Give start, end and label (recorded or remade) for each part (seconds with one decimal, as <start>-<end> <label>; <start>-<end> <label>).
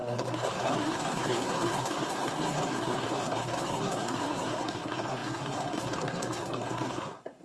0.0-7.4 remade